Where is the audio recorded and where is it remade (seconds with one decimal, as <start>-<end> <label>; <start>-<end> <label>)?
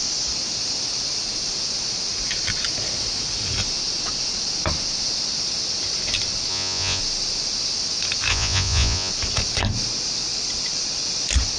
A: 0.0-6.5 recorded; 6.5-7.0 remade; 7.0-8.3 recorded; 8.3-9.1 remade; 9.1-11.6 recorded